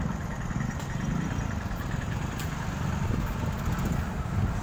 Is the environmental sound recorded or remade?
recorded